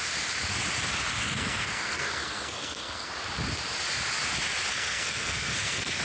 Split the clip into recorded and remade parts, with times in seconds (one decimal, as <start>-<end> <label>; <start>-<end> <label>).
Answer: 0.0-1.2 recorded; 1.2-3.1 remade; 3.1-4.7 recorded; 4.7-6.0 remade